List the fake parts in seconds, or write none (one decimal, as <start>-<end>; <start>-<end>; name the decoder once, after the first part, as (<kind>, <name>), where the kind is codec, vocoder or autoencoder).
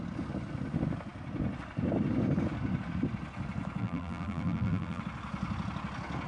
3.8-5.0 (vocoder, BigVGAN v2)